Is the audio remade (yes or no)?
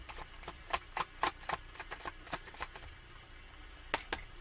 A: no